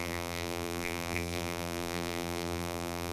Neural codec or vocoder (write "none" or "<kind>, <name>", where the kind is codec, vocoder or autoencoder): vocoder, BigVGAN v2